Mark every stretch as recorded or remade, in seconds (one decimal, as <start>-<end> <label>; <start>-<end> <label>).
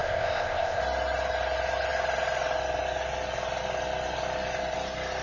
0.0-0.8 remade; 0.8-5.2 recorded